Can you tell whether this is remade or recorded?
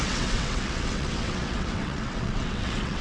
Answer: remade